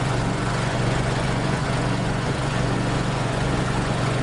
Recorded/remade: remade